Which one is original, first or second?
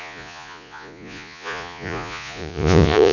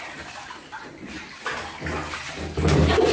second